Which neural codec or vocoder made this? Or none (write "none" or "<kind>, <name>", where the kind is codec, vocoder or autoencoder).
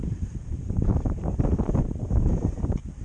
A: vocoder, BigVGAN v2